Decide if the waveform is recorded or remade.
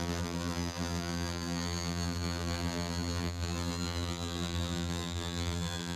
remade